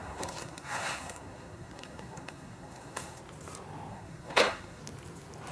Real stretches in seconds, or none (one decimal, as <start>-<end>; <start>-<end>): 3.2-3.9; 4.8-5.5